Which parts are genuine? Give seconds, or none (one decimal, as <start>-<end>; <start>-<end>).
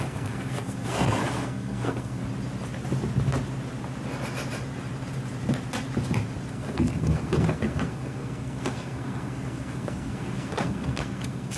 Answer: 2.2-6.5